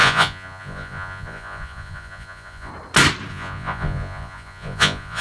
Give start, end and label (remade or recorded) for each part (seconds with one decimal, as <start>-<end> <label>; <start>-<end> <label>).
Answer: 0.0-2.7 remade; 2.7-3.3 recorded; 3.3-5.2 remade